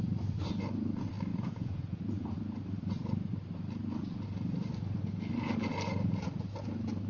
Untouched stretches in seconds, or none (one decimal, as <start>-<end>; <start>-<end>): 0.0-1.3; 2.4-7.1